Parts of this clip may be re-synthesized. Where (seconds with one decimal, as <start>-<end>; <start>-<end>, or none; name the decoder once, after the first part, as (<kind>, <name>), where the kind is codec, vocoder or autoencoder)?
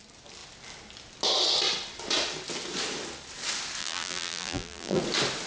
3.8-5.0 (vocoder, BigVGAN v2)